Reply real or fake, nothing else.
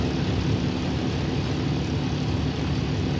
real